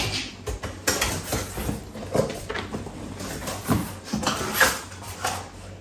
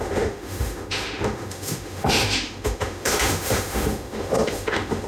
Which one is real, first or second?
first